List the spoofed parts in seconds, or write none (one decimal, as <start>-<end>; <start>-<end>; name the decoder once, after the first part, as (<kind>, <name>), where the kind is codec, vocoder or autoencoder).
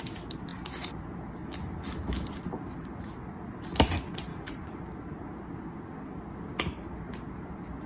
4.3-4.8 (vocoder, Vocos)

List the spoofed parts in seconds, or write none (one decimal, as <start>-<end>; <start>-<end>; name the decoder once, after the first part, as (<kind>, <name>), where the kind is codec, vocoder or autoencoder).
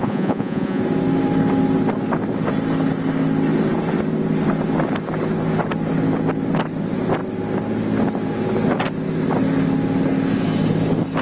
0.0-0.8 (vocoder, Vocos)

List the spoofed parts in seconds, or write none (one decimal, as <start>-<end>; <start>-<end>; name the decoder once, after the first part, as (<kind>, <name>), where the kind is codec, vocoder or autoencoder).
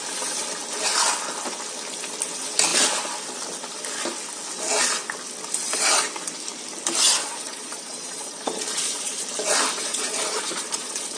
7.2-9.2 (vocoder, Vocos); 9.9-11.2